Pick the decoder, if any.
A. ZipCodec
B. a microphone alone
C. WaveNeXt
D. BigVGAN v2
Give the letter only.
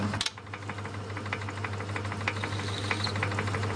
B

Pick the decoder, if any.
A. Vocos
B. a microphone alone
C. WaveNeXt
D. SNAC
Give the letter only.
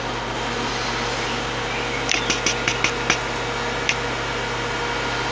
B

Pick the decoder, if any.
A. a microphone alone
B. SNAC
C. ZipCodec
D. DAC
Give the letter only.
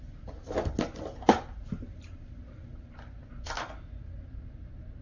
A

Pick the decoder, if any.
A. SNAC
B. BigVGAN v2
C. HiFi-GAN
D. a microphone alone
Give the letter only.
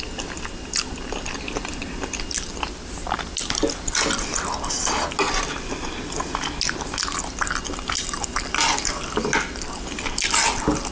D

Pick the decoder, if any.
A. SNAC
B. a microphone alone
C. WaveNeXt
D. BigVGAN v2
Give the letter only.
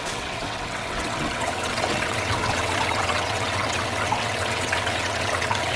C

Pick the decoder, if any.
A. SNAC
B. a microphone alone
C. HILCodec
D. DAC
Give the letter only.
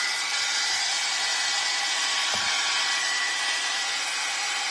B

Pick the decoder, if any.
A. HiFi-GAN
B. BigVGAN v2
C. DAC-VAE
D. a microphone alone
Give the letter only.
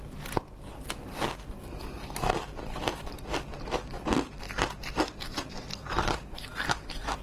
D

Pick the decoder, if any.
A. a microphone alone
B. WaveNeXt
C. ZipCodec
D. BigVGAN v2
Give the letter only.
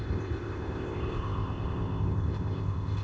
C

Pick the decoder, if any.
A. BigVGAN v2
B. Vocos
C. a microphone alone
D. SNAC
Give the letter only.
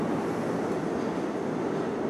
C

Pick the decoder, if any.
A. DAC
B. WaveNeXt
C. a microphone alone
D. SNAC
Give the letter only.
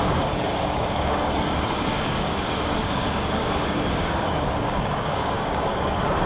A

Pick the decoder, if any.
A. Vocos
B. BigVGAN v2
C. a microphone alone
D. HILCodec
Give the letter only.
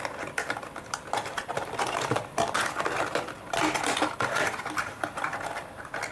B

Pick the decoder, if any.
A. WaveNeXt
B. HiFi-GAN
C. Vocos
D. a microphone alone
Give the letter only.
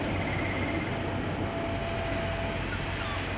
D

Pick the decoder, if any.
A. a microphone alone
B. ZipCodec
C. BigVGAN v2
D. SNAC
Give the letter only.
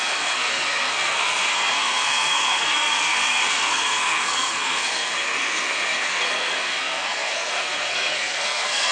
D